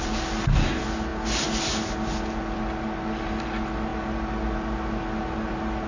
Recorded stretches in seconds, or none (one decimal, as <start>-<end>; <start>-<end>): 0.0-5.9